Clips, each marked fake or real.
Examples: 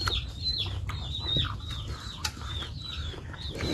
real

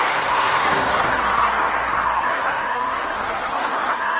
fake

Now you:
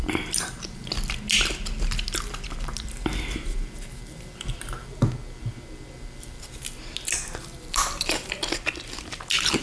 real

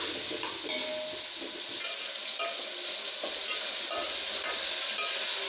real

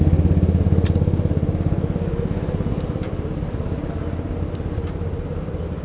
real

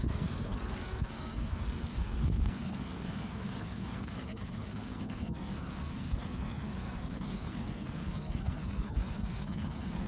fake